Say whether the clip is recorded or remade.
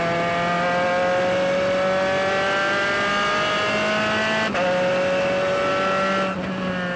recorded